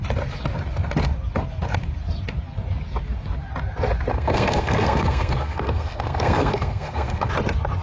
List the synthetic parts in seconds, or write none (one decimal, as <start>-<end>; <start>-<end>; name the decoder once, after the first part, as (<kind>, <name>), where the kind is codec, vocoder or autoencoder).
4.1-7.3 (codec, SNAC)